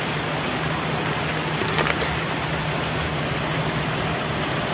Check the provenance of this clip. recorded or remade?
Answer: recorded